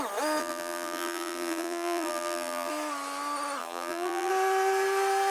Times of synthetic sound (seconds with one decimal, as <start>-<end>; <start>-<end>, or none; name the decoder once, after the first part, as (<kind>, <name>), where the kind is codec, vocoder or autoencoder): 0.4-2.7 (vocoder, BigVGAN v2); 3.6-4.3